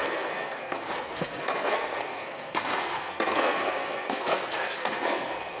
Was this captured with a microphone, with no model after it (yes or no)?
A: no